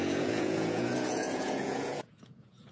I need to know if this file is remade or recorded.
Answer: remade